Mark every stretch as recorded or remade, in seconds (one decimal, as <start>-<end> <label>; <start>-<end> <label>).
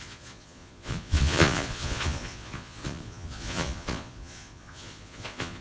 0.0-5.6 remade